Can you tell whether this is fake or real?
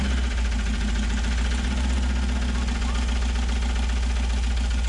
real